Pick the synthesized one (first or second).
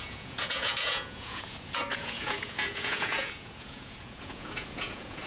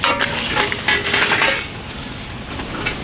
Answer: first